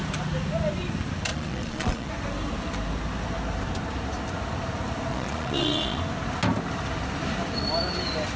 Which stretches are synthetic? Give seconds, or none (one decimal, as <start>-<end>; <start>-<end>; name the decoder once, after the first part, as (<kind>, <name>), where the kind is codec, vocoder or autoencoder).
1.3-2.1 (vocoder, Vocos); 5.1-6.0